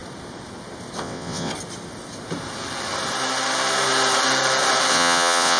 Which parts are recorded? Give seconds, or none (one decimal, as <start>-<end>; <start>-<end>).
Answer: 0.0-1.0; 1.5-4.9